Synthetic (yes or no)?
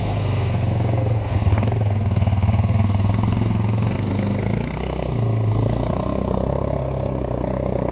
yes